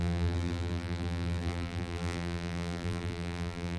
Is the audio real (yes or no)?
no